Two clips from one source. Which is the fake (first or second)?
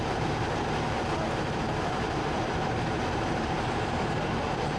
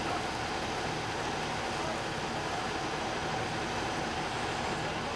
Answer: first